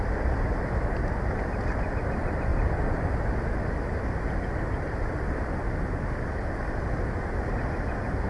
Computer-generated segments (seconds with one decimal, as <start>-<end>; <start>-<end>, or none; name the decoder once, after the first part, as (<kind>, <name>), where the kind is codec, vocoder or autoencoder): 2.5-3.3 (vocoder, BigVGAN v2)